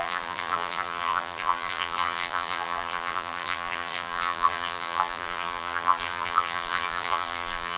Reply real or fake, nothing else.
fake